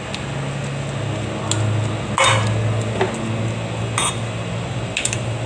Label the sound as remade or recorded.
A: recorded